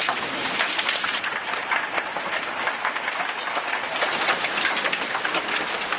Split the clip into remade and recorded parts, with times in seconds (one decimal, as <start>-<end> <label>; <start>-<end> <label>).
0.0-6.0 recorded